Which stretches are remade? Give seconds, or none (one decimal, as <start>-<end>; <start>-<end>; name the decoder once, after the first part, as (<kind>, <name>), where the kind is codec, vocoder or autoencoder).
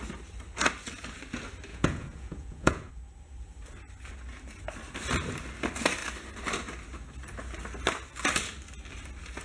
1.7-2.9 (vocoder, Vocos)